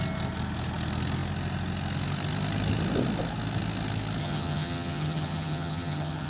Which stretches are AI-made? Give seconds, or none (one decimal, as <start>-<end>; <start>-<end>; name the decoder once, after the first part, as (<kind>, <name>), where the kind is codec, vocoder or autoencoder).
4.2-6.3 (vocoder, HiFi-GAN)